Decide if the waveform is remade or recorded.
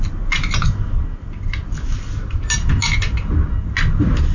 recorded